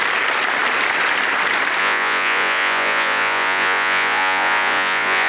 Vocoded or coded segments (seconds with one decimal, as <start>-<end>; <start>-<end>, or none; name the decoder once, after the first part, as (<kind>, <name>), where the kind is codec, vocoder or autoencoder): 1.8-5.3 (vocoder, Vocos)

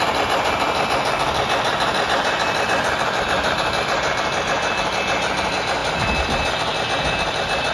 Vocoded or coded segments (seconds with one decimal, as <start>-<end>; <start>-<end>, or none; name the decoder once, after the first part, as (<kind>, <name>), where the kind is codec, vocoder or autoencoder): 1.7-3.9 (vocoder, BigVGAN v2)

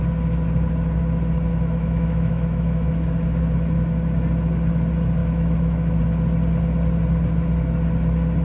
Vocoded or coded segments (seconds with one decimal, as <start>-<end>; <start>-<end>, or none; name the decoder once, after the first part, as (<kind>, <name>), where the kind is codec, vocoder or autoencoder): 1.5-2.9 (autoencoder, DAC-VAE); 5.2-6.0

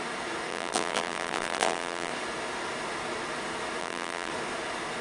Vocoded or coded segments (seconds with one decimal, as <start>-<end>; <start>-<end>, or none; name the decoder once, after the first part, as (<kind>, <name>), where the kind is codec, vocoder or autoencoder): 0.5-2.1 (vocoder, BigVGAN v2); 3.8-4.3

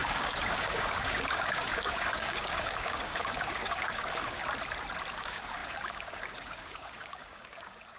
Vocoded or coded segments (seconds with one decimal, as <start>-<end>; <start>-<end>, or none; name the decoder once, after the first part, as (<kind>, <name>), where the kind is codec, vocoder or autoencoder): 0.0-4.4 (codec, DAC); 5.1-8.0

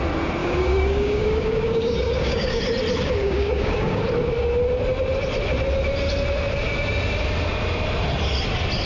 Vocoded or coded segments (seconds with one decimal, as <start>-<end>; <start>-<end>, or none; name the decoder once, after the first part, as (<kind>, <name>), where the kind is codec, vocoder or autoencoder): 0.4-2.6 (codec, DAC); 3.2-4.0

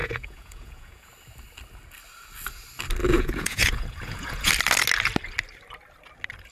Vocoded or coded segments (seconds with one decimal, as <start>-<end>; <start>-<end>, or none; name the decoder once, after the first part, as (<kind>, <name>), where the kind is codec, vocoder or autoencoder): 0.0-1.1 (vocoder, Vocos); 3.0-4.5

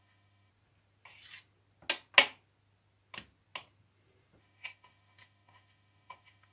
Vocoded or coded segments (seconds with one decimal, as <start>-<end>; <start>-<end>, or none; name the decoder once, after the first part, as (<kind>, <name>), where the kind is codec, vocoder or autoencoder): 0.0-0.5 (autoencoder, DAC-VAE); 4.4-6.5